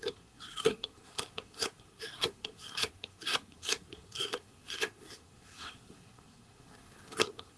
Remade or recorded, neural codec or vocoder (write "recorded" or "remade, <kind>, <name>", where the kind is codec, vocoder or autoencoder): remade, codec, SNAC